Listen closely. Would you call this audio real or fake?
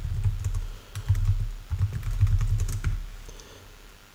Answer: real